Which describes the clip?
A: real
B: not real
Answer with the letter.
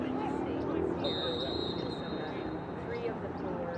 A